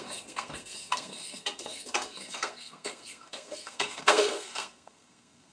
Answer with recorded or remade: remade